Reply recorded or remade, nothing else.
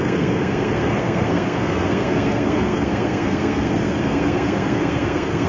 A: remade